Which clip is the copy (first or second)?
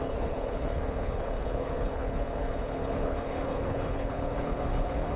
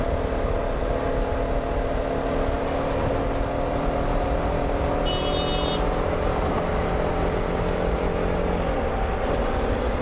first